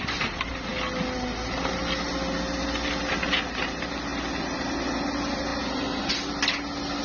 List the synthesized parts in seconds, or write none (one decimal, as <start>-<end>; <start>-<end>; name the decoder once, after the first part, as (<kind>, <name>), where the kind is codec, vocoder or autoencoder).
none